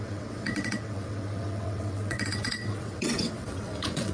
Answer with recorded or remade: remade